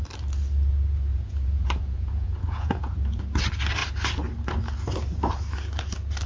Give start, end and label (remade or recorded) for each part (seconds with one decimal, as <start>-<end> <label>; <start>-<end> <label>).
0.0-1.1 recorded; 1.1-3.2 remade; 3.2-6.3 recorded